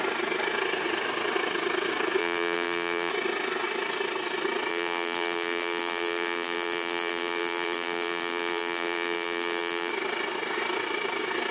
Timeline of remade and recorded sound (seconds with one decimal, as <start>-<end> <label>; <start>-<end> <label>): 0.0-2.2 recorded; 2.2-3.1 remade; 3.1-4.7 recorded; 4.7-9.9 remade; 9.9-11.5 recorded